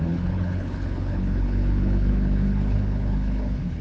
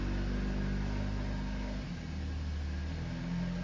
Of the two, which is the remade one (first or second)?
first